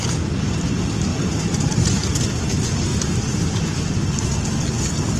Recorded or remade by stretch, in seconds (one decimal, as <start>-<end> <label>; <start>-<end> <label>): 0.0-1.1 recorded; 1.1-1.9 remade; 1.9-2.9 recorded; 2.9-4.0 remade; 4.0-5.2 recorded